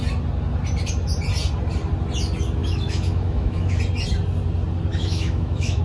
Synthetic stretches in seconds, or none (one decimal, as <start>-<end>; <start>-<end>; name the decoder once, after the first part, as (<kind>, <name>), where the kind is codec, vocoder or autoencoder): 2.6-3.8 (autoencoder, DAC-VAE); 4.9-5.8